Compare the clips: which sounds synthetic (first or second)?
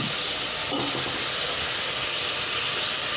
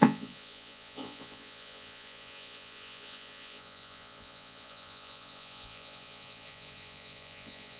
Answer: second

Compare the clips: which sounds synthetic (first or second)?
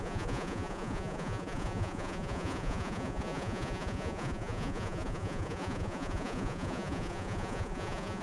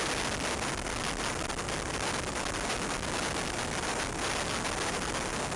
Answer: first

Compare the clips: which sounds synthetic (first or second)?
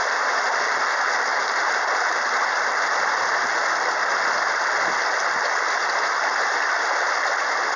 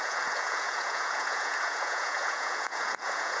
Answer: second